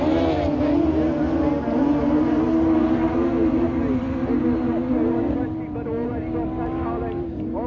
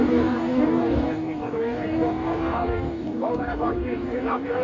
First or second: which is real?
first